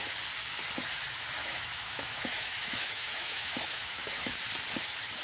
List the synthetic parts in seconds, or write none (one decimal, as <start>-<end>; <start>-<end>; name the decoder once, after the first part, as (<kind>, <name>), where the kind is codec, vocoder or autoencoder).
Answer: 1.4-4.4 (autoencoder, DAC-VAE)